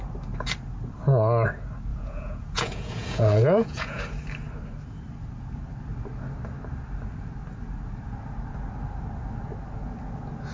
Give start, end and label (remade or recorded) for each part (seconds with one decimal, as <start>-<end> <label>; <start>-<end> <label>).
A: 0.0-1.9 recorded; 1.9-4.0 remade; 4.0-10.5 recorded